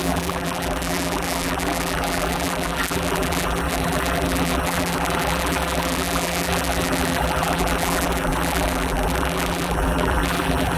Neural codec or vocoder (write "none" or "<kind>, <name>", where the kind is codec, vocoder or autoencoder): vocoder, BigVGAN v2